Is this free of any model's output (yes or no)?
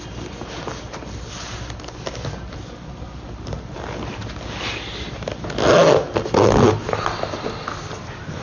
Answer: yes